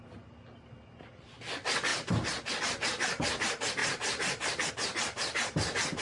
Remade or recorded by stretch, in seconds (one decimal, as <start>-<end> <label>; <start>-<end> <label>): 0.0-3.8 recorded; 3.8-4.7 remade; 4.7-6.0 recorded